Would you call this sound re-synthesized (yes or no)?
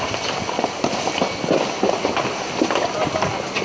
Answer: no